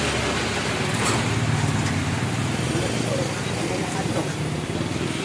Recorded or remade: recorded